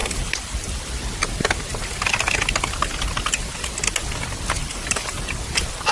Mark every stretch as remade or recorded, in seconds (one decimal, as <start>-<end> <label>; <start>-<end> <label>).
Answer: 0.0-0.9 remade; 0.9-4.6 recorded; 4.6-5.2 remade; 5.2-5.9 recorded